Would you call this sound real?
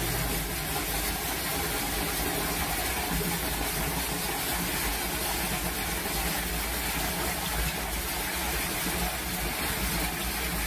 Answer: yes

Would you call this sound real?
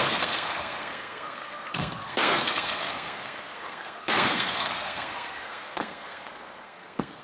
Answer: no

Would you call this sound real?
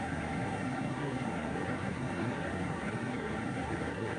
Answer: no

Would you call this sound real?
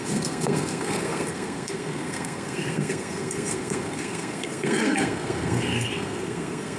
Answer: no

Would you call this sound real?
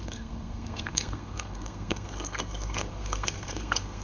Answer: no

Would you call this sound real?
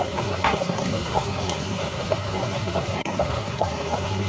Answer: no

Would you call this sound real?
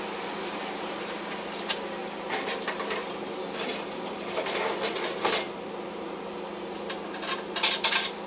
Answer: yes